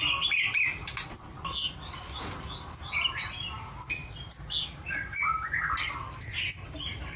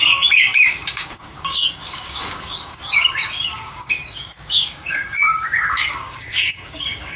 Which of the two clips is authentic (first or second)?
first